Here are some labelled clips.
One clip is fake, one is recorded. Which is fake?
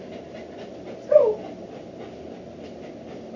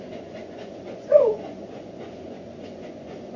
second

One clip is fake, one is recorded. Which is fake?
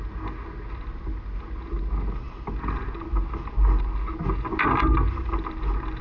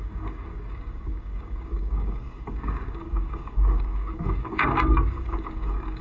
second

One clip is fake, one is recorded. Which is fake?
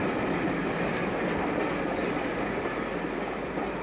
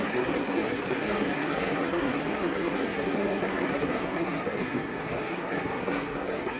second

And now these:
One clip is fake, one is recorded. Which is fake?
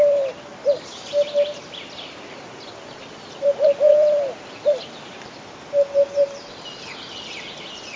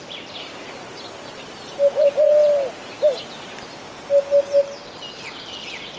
first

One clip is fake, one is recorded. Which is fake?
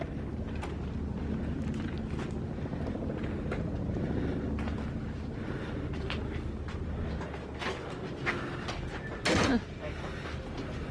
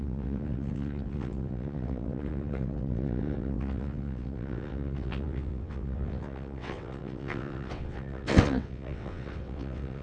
second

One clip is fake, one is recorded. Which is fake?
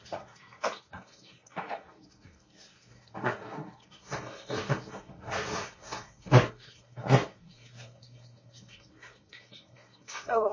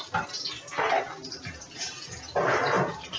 first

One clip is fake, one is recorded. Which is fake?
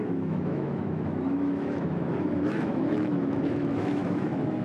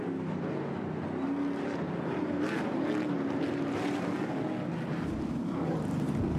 first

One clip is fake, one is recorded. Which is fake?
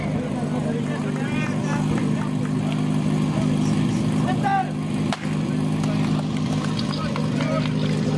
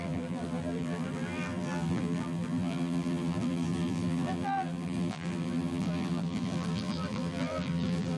second